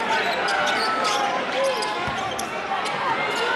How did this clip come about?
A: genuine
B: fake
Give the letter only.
A